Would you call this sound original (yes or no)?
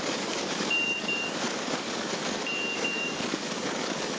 no